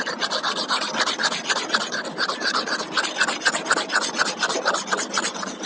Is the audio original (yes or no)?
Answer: yes